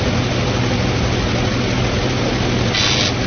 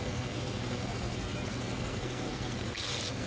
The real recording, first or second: first